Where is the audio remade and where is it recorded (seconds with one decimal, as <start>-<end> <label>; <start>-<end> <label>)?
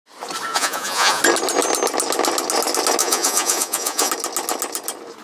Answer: 0.0-0.5 recorded; 0.5-1.2 remade; 1.2-3.0 recorded; 3.0-4.1 remade; 4.1-5.2 recorded